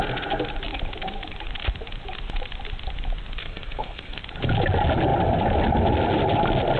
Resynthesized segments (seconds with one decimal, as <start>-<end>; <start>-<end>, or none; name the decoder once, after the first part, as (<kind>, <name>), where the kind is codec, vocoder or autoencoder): 3.4-4.2 (codec, SNAC)